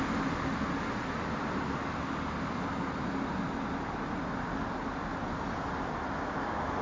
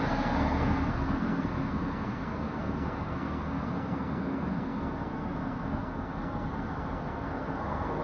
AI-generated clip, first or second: second